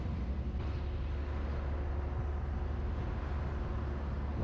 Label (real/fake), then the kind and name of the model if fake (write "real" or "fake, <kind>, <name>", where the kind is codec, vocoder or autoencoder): real